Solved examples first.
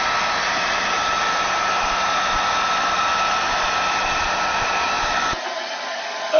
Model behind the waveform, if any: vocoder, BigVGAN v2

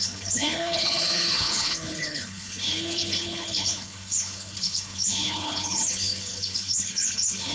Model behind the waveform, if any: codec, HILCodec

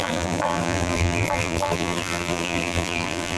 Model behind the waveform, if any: vocoder, BigVGAN v2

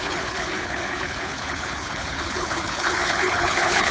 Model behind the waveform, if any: codec, HILCodec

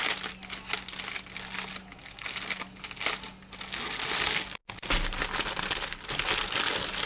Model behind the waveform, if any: none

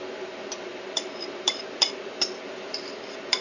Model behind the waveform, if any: vocoder, BigVGAN v2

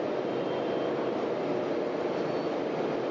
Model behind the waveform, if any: vocoder, BigVGAN v2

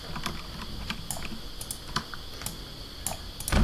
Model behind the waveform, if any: none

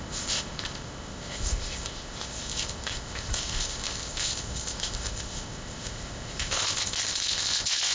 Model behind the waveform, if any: codec, ZipCodec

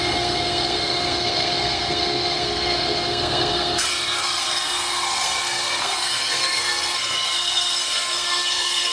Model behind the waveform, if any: codec, SNAC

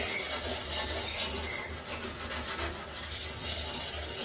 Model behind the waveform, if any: none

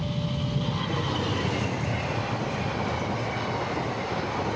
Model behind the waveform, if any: none